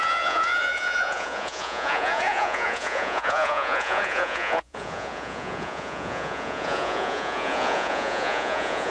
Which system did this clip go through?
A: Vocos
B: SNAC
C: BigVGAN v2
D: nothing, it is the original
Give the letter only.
A